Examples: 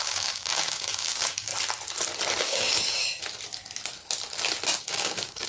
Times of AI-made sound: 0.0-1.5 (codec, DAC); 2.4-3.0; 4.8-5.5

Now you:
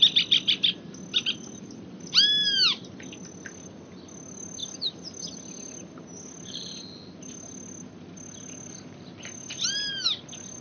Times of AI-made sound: none

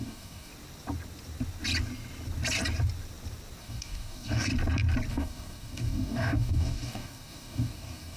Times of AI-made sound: 0.0-0.5 (codec, DAC); 3.6-4.5; 5.1-8.2

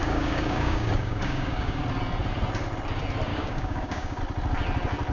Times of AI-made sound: 0.0-1.8 (codec, DAC); 3.3-4.2

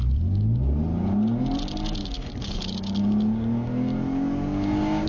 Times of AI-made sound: 2.0-5.1 (codec, DAC)

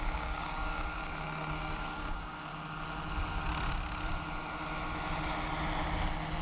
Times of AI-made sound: 0.0-1.0 (codec, DAC); 1.5-2.5

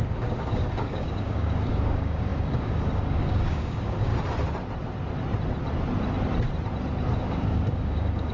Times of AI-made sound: 0.0-4.1 (codec, DAC); 7.2-8.3

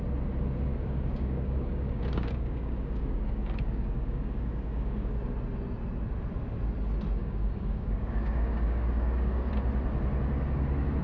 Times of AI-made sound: 0.7-5.1 (codec, DAC); 7.2-9.5